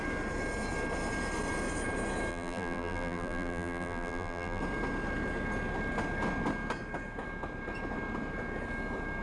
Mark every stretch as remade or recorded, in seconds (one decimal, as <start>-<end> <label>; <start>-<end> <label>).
0.0-2.3 recorded; 2.3-4.6 remade; 4.6-9.2 recorded